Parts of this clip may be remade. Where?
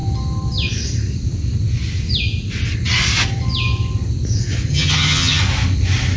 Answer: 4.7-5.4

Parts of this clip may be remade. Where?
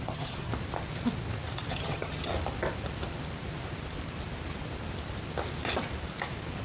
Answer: 0.0-0.5; 1.7-2.3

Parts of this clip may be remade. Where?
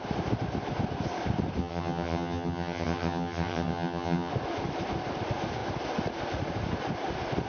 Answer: 1.6-4.3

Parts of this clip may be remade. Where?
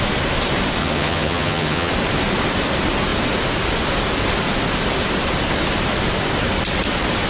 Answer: 0.8-1.9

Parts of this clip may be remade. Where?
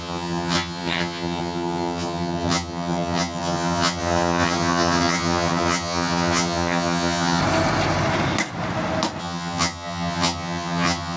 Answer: 0.0-7.4; 9.2-11.2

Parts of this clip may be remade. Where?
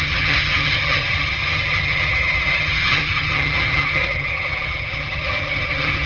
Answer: 0.0-6.1